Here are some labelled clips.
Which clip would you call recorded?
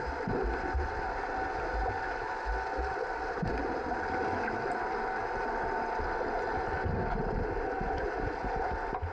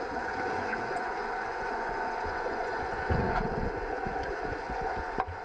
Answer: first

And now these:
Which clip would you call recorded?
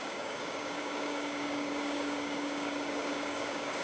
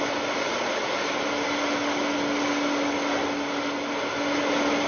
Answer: second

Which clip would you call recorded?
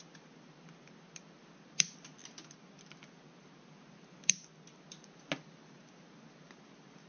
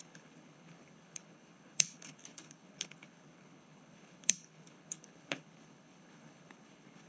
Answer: first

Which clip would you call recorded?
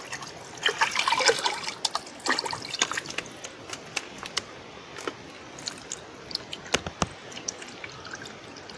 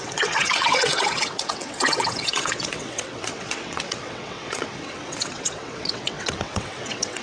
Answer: first